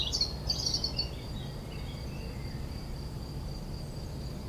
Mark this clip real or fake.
real